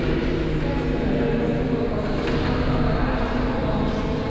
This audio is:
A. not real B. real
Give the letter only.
B